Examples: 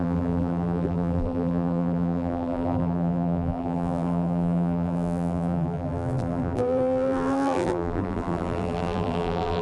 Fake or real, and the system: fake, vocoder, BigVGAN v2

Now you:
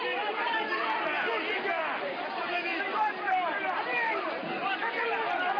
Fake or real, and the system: fake, vocoder, BigVGAN v2